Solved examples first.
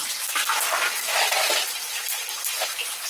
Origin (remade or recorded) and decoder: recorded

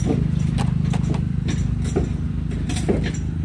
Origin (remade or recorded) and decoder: recorded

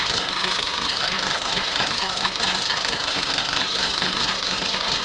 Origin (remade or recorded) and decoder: remade, codec, SNAC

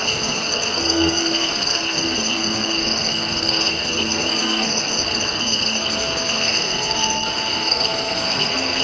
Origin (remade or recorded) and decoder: remade, codec, SNAC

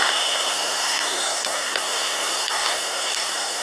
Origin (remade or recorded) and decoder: remade, codec, SNAC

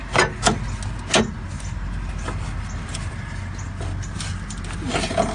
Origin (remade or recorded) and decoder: recorded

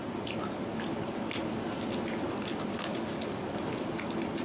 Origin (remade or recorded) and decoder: recorded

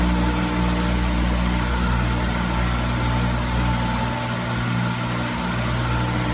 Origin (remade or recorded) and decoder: recorded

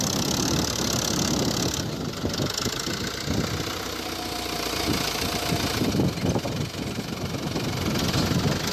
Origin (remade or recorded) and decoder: recorded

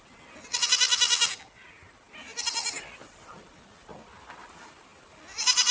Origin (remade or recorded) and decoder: recorded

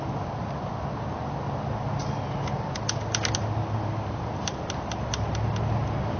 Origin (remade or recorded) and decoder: recorded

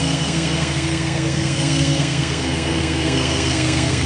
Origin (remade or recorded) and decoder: remade, codec, SNAC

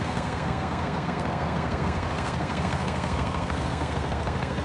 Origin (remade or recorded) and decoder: remade, codec, SNAC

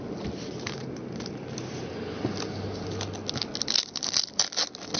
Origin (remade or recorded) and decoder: recorded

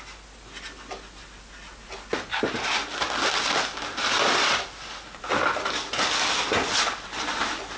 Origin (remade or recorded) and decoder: recorded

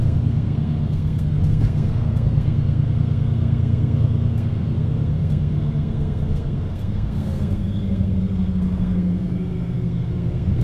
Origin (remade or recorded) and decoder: remade, codec, SNAC